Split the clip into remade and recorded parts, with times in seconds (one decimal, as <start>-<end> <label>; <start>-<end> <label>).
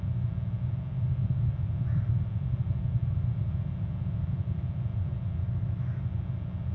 0.0-5.4 recorded; 5.4-6.0 remade; 6.0-6.7 recorded